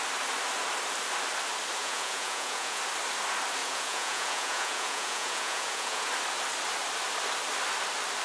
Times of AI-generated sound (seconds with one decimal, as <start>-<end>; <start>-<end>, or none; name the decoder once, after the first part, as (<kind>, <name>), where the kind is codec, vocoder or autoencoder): 1.8-2.8 (vocoder, Vocos); 3.6-6.1